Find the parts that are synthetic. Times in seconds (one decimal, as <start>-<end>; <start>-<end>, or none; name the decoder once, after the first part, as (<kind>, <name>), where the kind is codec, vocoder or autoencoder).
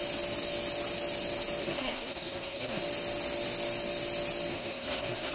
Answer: 1.6-2.8 (codec, SNAC); 4.5-5.3